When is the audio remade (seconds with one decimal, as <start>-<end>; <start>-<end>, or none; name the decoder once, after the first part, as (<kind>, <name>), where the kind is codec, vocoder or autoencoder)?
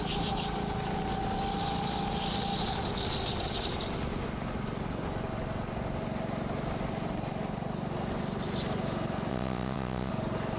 9.3-10.1 (vocoder, WaveNeXt)